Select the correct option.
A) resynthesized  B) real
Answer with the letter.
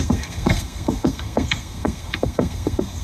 A